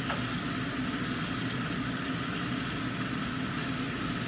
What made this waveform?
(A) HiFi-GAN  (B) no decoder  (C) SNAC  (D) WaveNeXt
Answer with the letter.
B